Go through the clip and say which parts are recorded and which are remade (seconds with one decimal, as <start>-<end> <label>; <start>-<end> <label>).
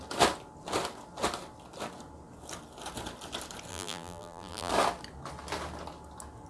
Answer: 0.0-3.7 recorded; 3.7-4.7 remade; 4.7-6.5 recorded